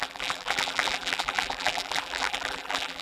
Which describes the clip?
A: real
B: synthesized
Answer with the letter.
B